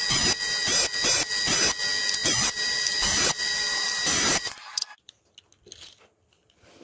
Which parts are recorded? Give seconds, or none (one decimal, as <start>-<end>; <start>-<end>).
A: 0.0-2.2; 5.3-6.8